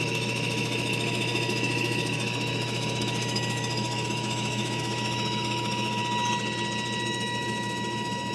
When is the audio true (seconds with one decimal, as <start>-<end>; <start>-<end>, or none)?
6.0-7.0